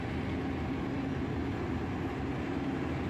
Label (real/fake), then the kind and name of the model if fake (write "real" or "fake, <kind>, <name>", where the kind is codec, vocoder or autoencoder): real